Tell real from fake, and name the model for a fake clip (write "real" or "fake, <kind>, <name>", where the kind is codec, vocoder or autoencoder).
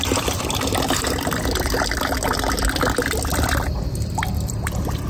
fake, vocoder, BigVGAN v2